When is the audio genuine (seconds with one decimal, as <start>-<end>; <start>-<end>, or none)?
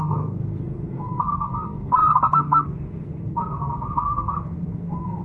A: none